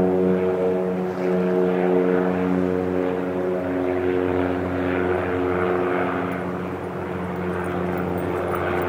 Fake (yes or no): no